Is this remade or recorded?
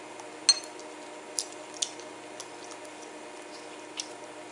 recorded